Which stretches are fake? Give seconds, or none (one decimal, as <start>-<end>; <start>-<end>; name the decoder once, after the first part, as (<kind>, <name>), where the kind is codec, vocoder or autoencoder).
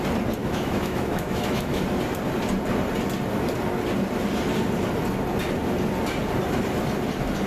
0.4-1.8 (autoencoder, DAC-VAE)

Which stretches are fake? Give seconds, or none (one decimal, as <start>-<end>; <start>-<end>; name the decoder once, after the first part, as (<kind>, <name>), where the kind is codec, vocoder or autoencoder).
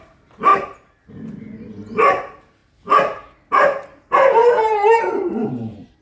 4.4-6.0 (vocoder, BigVGAN v2)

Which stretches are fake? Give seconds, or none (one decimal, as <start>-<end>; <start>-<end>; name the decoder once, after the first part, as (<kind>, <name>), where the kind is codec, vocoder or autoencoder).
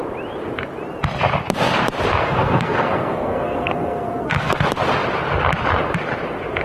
2.2-4.5 (codec, SNAC)